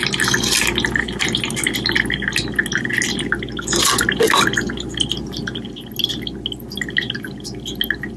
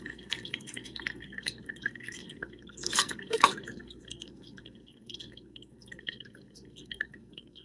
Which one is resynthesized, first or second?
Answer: second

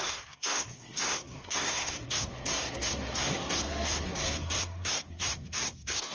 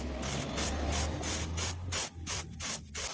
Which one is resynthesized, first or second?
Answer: first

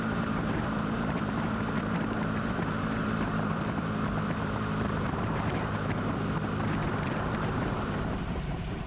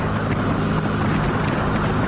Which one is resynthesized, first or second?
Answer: first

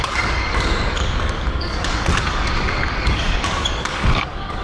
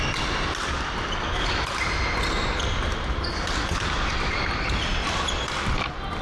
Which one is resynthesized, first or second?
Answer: first